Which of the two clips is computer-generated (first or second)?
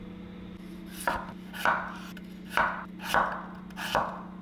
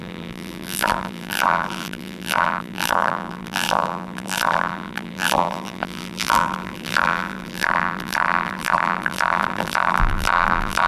second